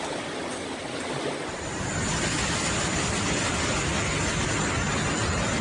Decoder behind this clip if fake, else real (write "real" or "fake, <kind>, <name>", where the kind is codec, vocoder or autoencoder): real